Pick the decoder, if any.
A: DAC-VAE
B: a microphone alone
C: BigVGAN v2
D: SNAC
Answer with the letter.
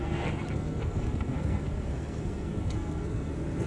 D